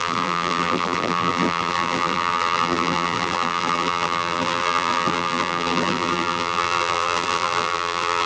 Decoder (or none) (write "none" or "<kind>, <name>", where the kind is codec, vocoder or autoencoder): vocoder, BigVGAN v2